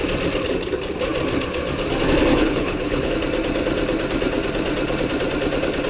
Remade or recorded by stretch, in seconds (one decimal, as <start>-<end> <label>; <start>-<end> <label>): 0.0-2.3 recorded; 2.3-3.1 remade; 3.1-5.9 recorded